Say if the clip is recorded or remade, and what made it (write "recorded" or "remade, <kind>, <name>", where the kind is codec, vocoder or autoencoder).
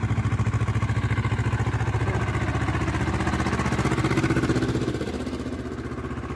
recorded